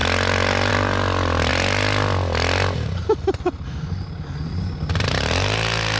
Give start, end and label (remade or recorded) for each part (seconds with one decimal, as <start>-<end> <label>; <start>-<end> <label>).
0.0-6.0 recorded